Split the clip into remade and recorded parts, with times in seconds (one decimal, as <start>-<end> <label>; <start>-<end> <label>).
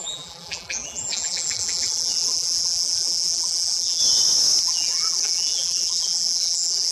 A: 0.0-4.0 remade; 4.0-4.6 recorded; 4.6-6.9 remade